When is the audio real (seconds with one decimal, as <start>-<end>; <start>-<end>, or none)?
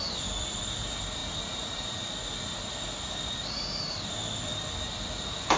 4.5-5.1